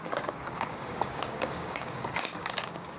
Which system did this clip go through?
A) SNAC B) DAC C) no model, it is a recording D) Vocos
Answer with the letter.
B